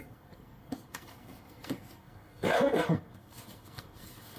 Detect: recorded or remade remade